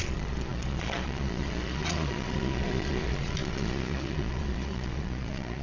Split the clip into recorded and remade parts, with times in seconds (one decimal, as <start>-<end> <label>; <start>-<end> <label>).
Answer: 0.0-5.6 remade